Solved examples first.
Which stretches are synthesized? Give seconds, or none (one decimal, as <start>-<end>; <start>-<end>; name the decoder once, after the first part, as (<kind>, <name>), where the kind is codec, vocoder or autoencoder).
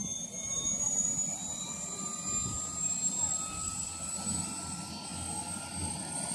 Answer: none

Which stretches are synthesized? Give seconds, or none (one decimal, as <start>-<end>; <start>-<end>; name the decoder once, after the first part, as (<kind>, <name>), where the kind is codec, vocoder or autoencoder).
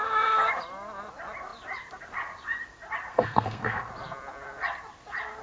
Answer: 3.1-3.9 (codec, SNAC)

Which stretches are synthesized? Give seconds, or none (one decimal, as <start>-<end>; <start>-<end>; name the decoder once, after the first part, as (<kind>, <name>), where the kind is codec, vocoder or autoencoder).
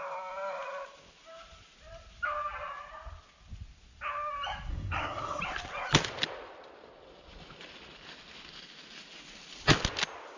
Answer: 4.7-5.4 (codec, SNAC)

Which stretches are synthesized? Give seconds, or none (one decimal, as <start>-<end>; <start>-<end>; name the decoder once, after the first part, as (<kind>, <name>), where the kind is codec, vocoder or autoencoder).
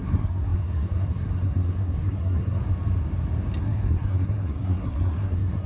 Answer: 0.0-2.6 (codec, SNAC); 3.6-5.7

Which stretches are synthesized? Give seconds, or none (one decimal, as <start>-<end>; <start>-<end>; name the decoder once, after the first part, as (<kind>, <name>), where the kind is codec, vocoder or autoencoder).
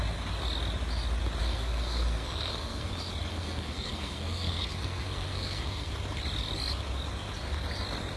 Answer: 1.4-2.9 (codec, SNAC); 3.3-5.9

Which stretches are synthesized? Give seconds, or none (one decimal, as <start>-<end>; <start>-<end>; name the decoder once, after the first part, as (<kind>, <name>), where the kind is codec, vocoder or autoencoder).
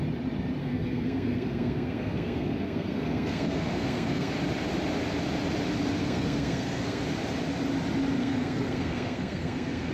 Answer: 0.6-4.3 (codec, SNAC); 6.0-7.0; 8.2-9.9